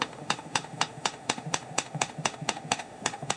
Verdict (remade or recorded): remade